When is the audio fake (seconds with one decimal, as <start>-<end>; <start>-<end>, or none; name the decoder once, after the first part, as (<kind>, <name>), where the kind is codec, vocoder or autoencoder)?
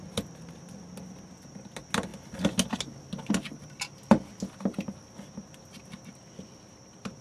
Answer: none